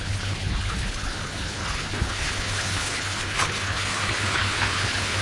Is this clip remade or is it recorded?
remade